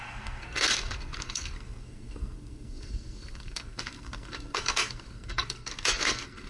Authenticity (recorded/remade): remade